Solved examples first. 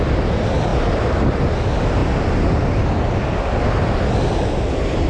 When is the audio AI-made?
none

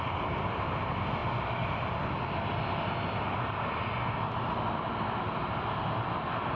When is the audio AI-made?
none

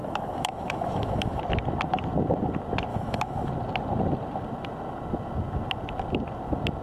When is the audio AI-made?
0.0-1.4 (autoencoder, DAC-VAE); 2.9-3.5

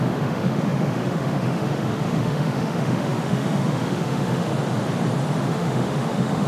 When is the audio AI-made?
0.0-4.5 (autoencoder, DAC-VAE); 5.4-6.5

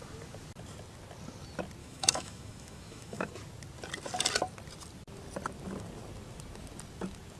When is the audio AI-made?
1.8-3.3 (autoencoder, DAC-VAE)

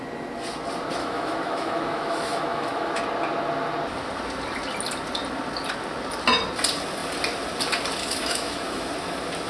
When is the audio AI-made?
1.0-3.0 (autoencoder, DAC-VAE); 8.0-8.9

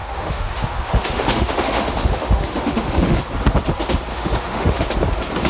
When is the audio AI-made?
0.0-3.2 (autoencoder, DAC-VAE); 4.1-4.8

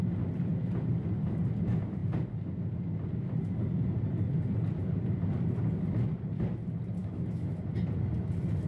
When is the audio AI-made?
7.0-7.6 (autoencoder, DAC-VAE)